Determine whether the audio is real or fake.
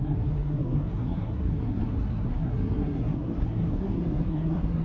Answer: fake